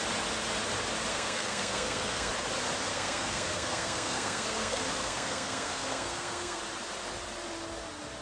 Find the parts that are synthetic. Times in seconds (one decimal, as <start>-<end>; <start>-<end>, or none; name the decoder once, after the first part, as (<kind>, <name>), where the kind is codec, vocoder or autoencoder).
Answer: 1.1-2.3 (codec, SNAC); 2.9-6.6